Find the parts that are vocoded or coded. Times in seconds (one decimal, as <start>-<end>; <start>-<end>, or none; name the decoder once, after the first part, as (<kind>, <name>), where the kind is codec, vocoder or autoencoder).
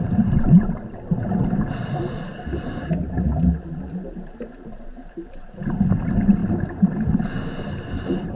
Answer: 0.0-0.8 (vocoder, BigVGAN v2); 3.9-6.4; 7.9-8.3